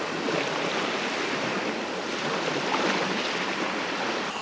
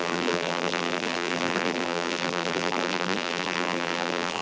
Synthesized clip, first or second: second